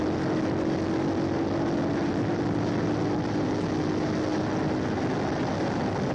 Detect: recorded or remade recorded